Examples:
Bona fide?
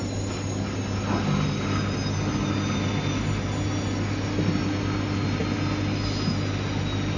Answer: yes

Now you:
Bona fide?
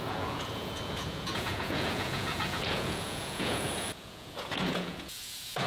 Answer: no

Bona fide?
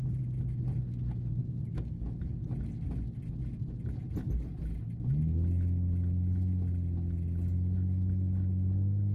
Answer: yes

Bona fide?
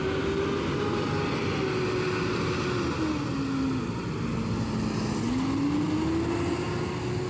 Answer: yes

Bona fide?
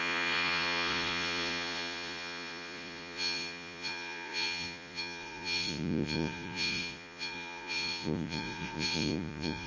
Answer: no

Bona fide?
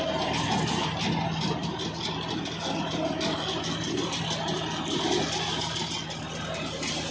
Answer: yes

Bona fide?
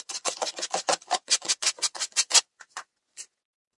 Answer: no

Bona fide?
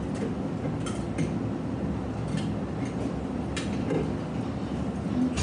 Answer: yes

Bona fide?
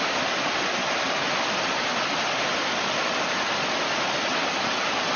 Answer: yes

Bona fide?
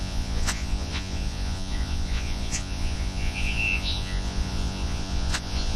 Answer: no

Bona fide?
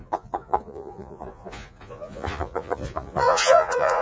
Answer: no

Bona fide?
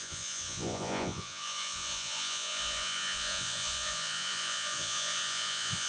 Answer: no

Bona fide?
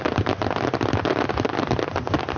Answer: yes